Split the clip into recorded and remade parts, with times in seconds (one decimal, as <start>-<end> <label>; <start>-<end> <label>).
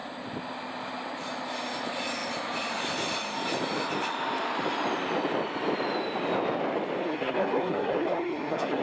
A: 0.0-7.0 recorded; 7.0-8.8 remade